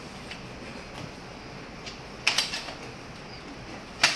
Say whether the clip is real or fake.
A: real